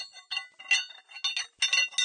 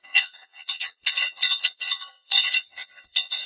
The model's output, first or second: second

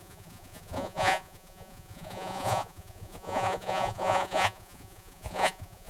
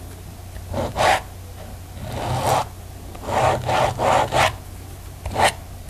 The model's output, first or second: first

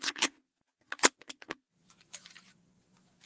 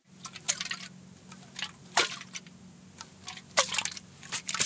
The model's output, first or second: first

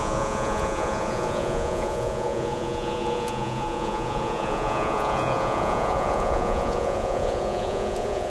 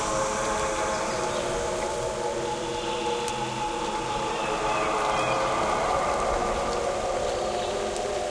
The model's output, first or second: first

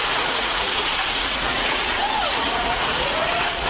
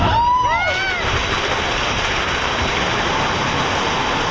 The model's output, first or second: first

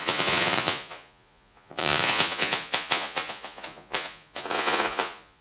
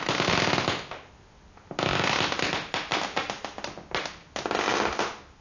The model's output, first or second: first